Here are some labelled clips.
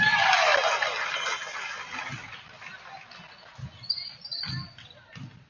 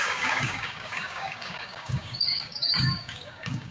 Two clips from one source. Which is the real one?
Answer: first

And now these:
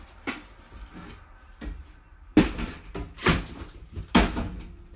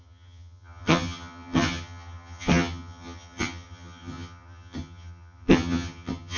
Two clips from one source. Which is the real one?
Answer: first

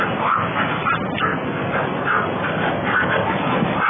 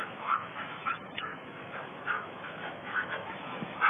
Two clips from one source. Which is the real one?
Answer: first